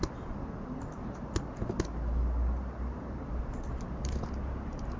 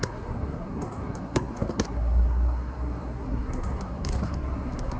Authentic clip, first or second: first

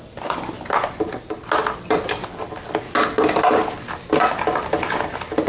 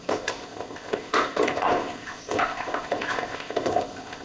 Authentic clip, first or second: first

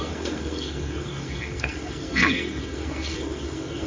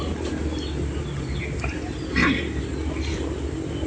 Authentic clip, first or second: second